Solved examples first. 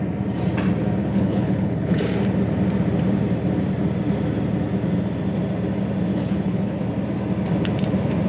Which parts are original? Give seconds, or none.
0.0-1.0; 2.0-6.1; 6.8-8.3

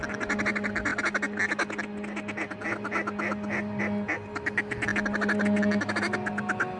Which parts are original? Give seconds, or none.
0.0-6.8

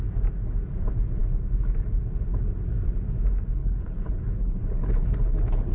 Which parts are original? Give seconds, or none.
0.0-3.6

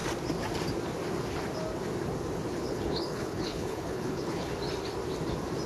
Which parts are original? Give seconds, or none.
0.0-2.5; 4.5-5.7